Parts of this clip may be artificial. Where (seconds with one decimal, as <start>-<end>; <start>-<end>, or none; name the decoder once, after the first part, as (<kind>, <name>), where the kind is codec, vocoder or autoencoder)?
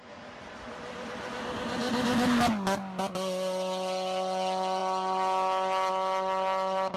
none